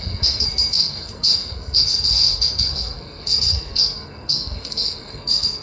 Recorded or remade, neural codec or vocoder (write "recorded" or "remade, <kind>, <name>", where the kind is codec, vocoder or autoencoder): remade, codec, SNAC